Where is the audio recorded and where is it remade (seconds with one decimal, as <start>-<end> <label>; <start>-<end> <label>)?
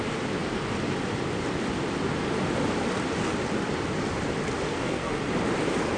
0.0-4.7 recorded; 4.7-5.2 remade; 5.2-6.0 recorded